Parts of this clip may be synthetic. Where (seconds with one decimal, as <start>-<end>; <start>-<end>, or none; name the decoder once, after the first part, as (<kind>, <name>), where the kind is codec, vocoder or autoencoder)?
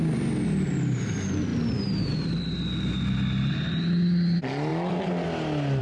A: none